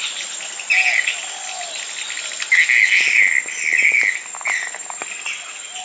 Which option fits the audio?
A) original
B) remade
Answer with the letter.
A